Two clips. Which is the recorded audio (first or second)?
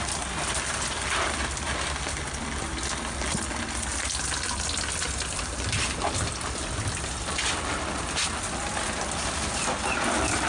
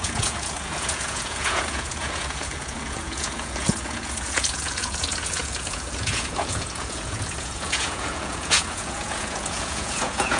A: first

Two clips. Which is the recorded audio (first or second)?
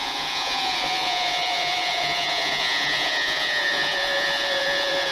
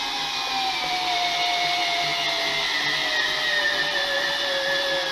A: second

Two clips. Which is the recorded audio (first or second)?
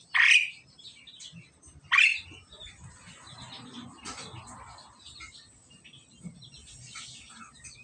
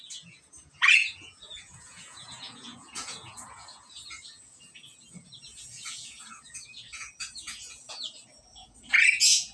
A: first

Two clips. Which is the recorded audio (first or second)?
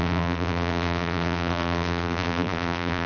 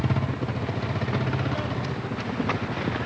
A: second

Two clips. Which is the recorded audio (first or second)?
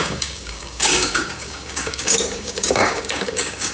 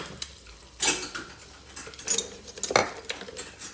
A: second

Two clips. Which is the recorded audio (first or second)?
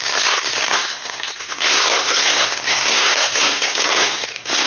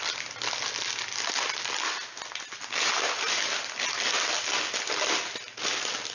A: second